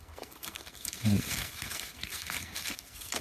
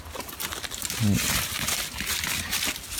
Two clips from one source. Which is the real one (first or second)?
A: second